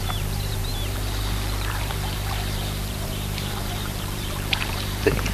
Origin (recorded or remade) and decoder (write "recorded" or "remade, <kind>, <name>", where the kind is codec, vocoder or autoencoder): remade, vocoder, BigVGAN v2